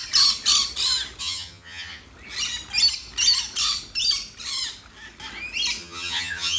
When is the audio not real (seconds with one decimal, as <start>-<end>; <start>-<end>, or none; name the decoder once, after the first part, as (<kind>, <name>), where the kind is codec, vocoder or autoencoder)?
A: 1.2-2.0 (vocoder, HiFi-GAN); 5.8-6.6